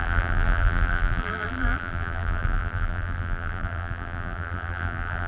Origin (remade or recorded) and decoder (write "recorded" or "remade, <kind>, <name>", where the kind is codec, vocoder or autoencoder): remade, vocoder, BigVGAN v2